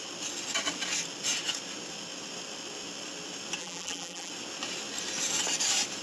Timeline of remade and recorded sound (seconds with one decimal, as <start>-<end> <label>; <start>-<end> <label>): 0.0-3.6 recorded; 3.6-4.3 remade; 4.3-6.0 recorded